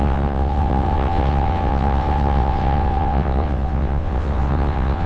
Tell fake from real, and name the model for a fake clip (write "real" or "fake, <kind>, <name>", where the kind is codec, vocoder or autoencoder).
fake, vocoder, WaveNeXt